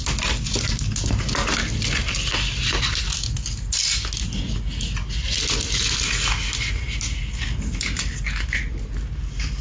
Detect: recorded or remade recorded